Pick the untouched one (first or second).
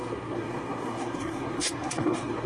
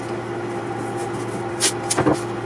second